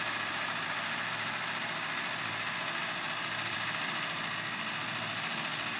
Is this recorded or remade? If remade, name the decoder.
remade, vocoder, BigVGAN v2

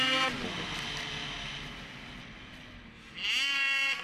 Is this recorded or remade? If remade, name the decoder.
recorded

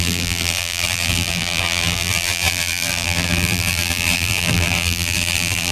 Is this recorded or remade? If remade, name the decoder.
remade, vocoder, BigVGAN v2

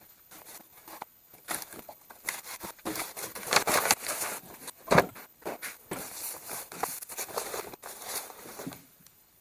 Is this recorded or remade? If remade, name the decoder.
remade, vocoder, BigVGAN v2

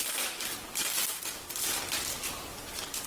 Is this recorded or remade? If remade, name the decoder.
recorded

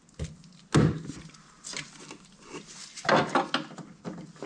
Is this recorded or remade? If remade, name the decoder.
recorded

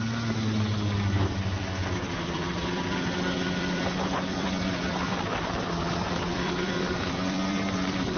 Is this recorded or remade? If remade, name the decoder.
remade, vocoder, BigVGAN v2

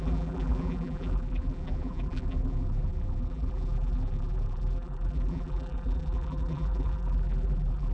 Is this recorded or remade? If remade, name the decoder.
remade, vocoder, BigVGAN v2